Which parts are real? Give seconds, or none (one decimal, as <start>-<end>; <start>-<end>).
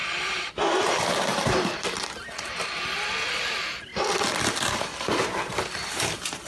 0.5-1.3; 2.0-3.9; 5.7-6.5